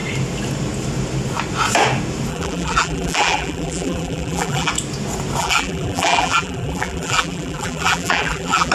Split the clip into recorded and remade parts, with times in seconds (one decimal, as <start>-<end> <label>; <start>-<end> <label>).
0.0-2.3 recorded; 2.3-4.7 remade; 4.7-5.4 recorded; 5.4-8.7 remade